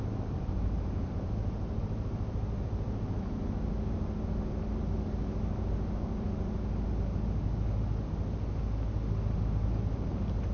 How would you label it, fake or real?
real